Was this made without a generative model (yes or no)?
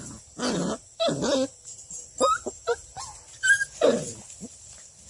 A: yes